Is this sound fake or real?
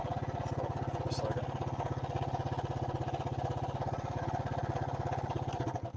real